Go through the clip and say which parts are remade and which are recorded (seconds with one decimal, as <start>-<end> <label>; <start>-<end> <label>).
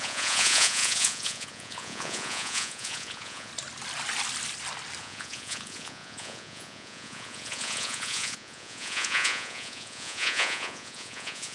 0.0-3.5 remade; 3.5-5.0 recorded; 5.0-11.5 remade